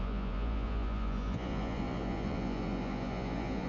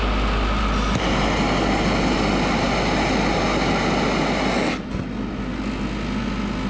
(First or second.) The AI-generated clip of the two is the first